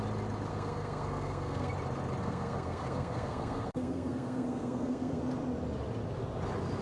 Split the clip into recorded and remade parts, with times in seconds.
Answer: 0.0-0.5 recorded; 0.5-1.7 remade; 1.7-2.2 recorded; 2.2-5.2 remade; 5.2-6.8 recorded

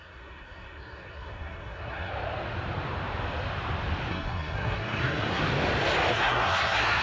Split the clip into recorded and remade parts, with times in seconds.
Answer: 0.0-2.1 remade; 2.1-4.1 recorded; 4.1-5.4 remade; 5.4-6.1 recorded; 6.1-7.0 remade

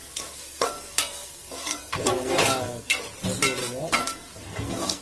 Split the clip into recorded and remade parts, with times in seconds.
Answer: 0.0-3.0 remade; 3.0-3.6 recorded; 3.6-5.0 remade

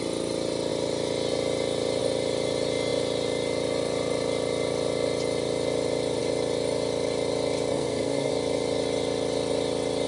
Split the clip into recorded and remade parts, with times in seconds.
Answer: 0.0-7.7 recorded; 7.7-8.3 remade; 8.3-10.1 recorded

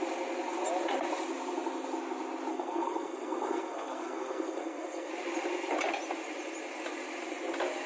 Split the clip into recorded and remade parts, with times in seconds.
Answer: 0.0-2.5 recorded; 2.5-5.1 remade; 5.1-7.9 recorded

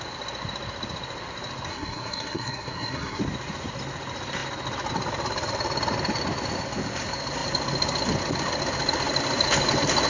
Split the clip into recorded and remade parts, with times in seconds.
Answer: 0.0-1.7 recorded; 1.7-3.2 remade; 3.2-10.1 recorded